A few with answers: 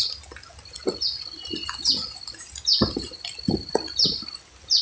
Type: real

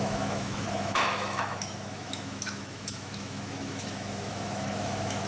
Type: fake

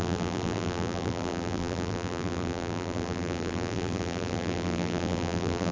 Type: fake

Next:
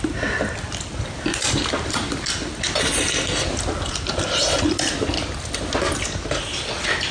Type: real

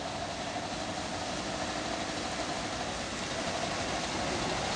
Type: real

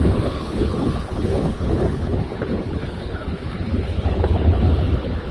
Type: fake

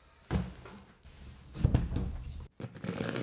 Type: real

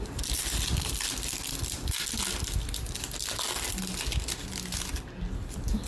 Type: real